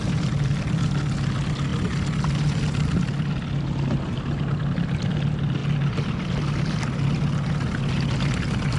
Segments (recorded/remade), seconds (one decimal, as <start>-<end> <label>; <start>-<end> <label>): 0.0-8.8 recorded